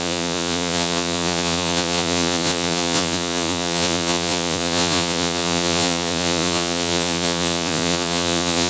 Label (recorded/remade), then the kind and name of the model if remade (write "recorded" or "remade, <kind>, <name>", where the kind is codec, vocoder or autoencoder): remade, vocoder, Vocos